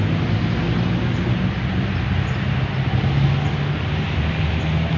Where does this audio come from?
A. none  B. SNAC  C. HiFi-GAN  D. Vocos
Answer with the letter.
A